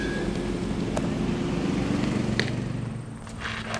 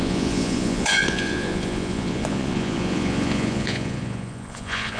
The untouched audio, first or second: first